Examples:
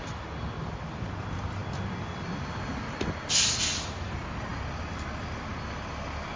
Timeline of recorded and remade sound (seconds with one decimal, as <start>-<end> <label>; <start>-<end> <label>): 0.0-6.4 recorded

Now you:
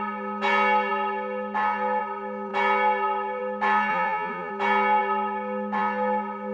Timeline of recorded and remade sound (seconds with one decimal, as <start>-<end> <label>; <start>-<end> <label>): 0.0-3.9 recorded; 3.9-4.5 remade; 4.5-6.5 recorded

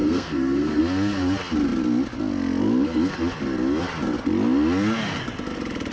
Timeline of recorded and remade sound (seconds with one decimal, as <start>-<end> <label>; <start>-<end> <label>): 0.0-0.8 remade; 0.8-5.9 recorded

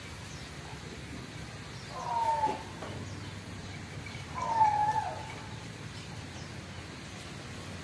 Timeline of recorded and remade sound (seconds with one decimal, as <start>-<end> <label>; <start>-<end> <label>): 0.0-3.6 recorded; 3.6-4.7 remade; 4.7-5.2 recorded; 5.2-7.8 remade